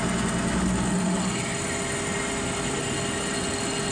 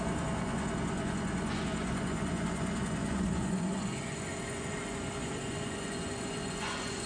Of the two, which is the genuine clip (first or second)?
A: first